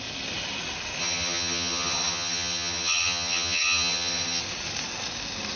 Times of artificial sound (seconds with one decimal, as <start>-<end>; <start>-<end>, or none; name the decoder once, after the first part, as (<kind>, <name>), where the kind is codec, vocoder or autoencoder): 1.0-4.4 (vocoder, HiFi-GAN)